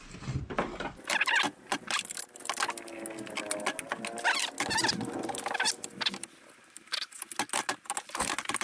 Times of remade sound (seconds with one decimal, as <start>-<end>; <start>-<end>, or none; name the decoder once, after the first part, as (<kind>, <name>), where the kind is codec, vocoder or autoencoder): none